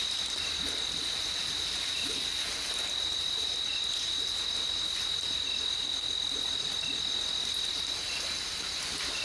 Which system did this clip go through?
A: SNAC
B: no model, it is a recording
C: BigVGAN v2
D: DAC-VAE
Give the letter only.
B